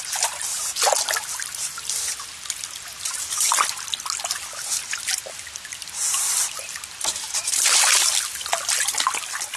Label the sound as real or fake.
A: real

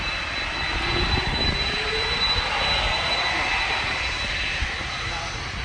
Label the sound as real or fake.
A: real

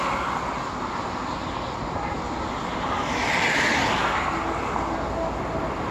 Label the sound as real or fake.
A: real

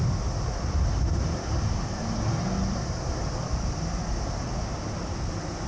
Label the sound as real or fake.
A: real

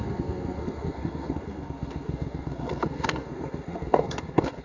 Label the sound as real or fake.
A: fake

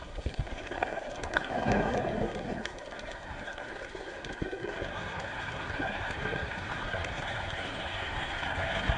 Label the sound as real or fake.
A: fake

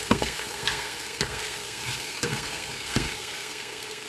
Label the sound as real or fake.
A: fake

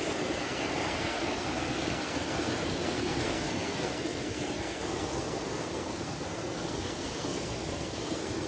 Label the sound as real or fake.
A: fake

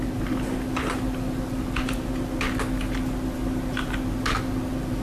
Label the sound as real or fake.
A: real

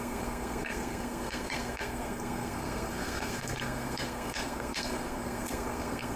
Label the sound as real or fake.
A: fake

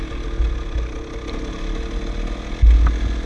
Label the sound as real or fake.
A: real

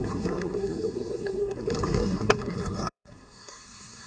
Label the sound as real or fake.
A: fake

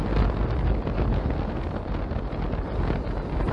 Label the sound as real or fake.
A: real